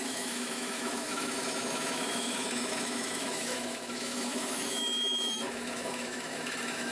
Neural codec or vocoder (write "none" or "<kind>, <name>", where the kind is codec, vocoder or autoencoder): autoencoder, DAC-VAE